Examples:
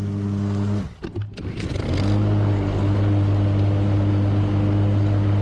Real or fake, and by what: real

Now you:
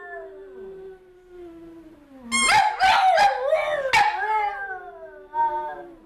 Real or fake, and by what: real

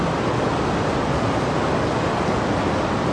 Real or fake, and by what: real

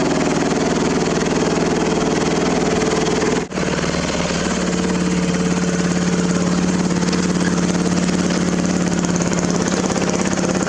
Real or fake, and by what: real